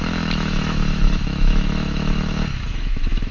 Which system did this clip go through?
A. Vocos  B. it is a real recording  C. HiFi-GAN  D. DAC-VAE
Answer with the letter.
D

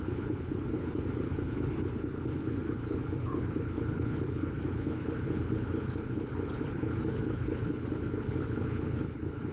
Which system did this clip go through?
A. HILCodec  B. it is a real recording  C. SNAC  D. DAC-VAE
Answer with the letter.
A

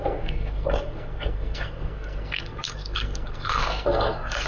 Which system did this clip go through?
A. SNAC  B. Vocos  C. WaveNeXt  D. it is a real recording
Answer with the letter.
A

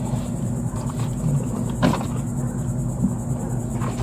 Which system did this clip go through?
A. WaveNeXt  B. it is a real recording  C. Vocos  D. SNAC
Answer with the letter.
B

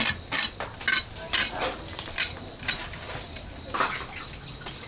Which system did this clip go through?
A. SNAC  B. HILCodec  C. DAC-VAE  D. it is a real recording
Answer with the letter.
D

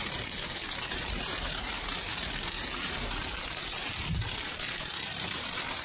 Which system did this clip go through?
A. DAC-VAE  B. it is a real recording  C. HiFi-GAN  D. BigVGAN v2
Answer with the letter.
D